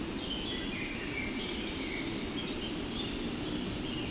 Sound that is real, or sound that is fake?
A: real